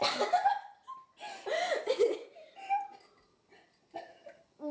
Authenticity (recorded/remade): recorded